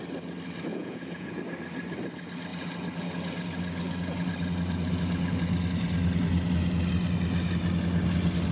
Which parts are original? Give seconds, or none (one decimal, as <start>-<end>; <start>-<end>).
0.0-0.7; 1.4-8.5